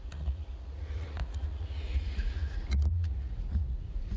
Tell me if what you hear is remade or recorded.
remade